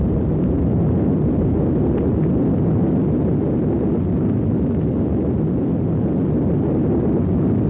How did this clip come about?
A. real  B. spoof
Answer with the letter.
A